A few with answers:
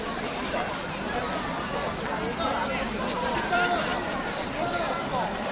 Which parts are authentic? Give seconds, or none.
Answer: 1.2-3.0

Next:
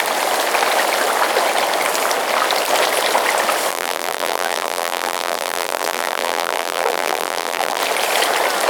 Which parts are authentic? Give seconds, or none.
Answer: 0.0-3.7; 7.8-8.7

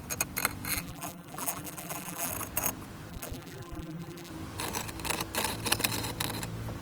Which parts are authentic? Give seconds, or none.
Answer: 0.0-0.7; 2.3-3.1; 4.3-6.8

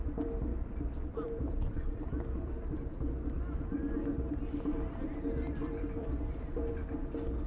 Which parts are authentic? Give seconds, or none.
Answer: 0.0-0.5; 2.9-4.7; 6.7-7.5

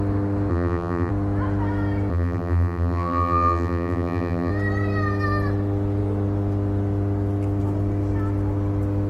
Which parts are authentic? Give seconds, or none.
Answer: 0.0-0.5; 1.1-2.1; 4.5-9.1